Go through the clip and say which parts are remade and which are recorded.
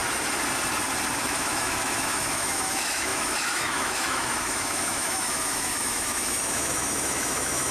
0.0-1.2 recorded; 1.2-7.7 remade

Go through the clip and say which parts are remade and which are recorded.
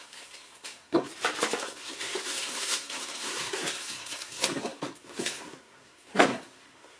0.0-1.1 remade; 1.1-1.6 recorded; 1.6-7.0 remade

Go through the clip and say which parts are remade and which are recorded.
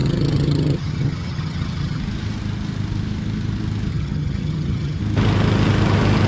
0.0-2.0 remade; 2.0-3.9 recorded; 3.9-5.0 remade; 5.0-6.3 recorded